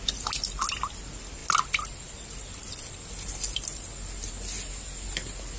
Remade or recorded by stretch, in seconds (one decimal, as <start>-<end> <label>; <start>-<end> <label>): 0.0-5.6 recorded

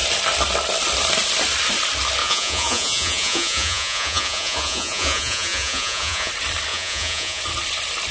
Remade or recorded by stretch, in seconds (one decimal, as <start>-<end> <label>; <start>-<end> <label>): 0.0-2.2 recorded; 2.2-6.3 remade; 6.3-6.7 recorded; 6.7-7.4 remade; 7.4-8.1 recorded

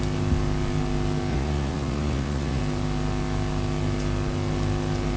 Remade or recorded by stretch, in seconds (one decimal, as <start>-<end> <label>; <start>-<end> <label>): 0.0-1.3 recorded; 1.3-2.6 remade; 2.6-5.2 recorded

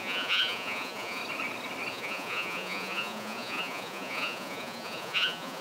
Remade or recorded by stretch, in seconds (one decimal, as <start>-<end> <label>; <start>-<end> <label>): 0.0-1.2 remade; 1.2-1.9 recorded; 1.9-5.6 remade

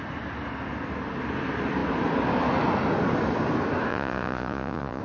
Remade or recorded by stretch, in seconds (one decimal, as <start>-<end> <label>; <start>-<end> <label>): 0.0-3.9 recorded; 3.9-5.0 remade